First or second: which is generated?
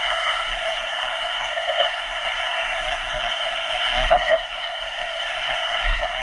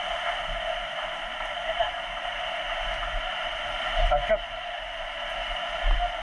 first